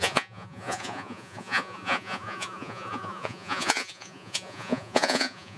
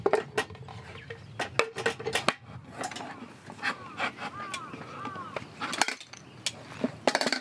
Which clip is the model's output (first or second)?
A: first